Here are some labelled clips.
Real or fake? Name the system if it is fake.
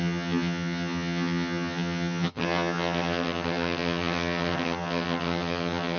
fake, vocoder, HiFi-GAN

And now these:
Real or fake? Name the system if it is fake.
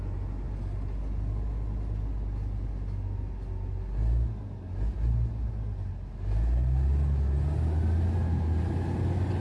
real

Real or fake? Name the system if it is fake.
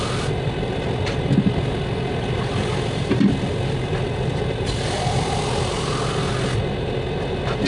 real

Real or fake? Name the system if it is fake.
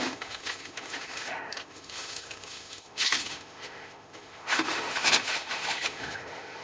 fake, autoencoder, DAC-VAE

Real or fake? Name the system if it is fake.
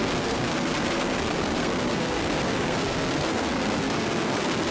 fake, codec, SNAC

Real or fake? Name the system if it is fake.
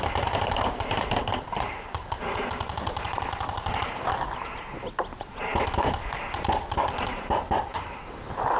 real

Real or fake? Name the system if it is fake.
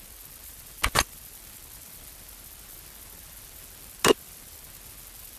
real